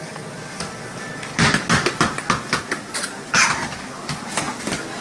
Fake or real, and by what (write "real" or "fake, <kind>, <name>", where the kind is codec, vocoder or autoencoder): real